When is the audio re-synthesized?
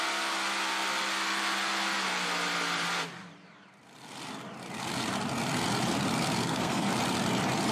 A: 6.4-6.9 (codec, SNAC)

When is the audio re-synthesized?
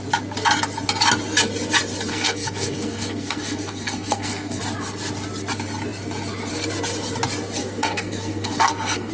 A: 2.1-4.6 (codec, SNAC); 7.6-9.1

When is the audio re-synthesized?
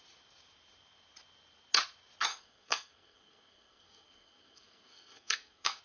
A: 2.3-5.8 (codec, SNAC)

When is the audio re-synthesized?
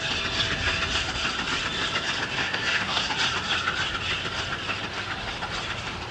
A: 2.4-3.1 (codec, SNAC)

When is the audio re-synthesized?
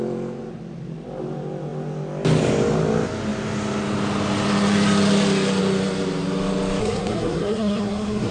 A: 6.8-8.3 (codec, SNAC)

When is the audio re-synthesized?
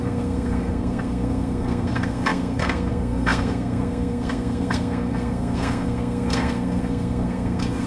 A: 0.0-7.9 (codec, SNAC)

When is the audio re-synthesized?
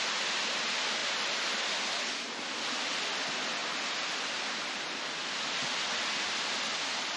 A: none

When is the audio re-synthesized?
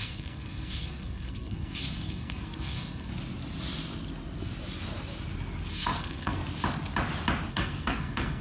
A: 0.0-3.1 (codec, SNAC); 5.7-6.4; 7.5-8.4